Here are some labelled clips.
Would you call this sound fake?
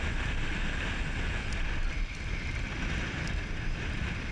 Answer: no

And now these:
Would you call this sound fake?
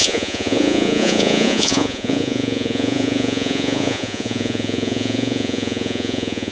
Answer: yes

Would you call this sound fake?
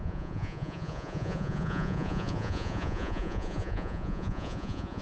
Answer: yes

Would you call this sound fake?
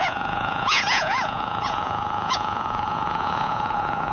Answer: yes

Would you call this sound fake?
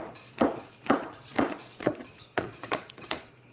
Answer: yes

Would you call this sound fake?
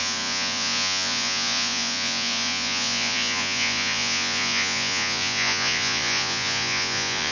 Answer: yes